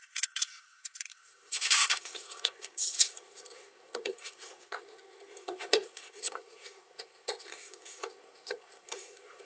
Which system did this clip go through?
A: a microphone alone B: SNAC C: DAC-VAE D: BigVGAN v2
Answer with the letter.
B